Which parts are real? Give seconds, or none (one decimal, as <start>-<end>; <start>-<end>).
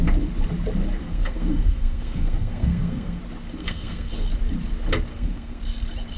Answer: 0.0-1.0; 3.2-3.6; 4.1-5.1; 5.6-6.2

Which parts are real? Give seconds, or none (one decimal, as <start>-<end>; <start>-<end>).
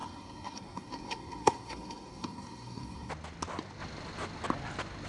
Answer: 3.1-5.1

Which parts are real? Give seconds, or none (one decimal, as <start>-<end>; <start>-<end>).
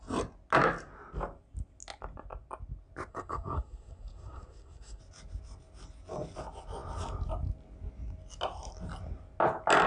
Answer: 0.0-3.1; 5.0-9.9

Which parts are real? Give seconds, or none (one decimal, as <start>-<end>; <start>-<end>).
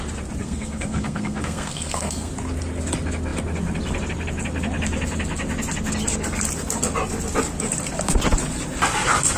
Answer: 0.0-0.4; 2.3-9.4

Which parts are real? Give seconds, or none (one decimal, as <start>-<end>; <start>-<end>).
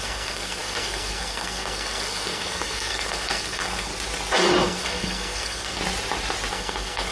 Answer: 3.9-4.6; 5.8-6.5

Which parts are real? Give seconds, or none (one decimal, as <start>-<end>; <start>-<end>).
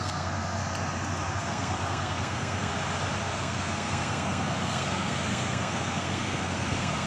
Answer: 0.6-1.3; 2.7-3.2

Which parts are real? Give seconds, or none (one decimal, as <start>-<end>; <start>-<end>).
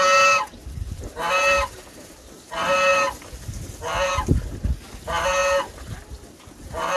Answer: 0.0-7.0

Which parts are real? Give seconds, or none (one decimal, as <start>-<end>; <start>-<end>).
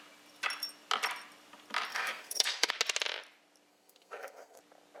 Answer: 0.0-1.9; 2.7-3.7; 4.6-5.0